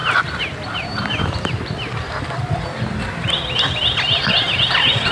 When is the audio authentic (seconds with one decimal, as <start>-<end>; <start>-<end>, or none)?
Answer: 1.5-5.1